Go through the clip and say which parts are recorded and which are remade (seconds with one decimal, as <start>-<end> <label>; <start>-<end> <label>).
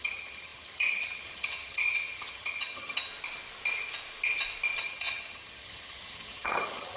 0.0-3.1 remade; 3.1-4.8 recorded; 4.8-7.0 remade